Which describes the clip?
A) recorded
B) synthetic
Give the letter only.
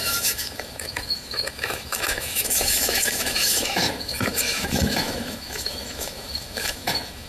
B